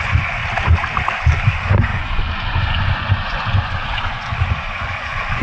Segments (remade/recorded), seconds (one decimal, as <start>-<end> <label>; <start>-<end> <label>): 0.0-0.4 remade; 0.4-1.4 recorded; 1.4-5.4 remade